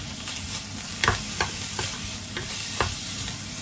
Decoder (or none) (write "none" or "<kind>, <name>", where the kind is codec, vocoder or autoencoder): none